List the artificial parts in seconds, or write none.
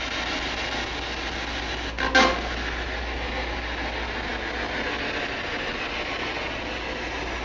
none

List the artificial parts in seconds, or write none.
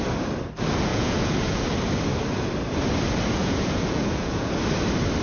0.9-1.6 (vocoder, Vocos); 3.4-4.5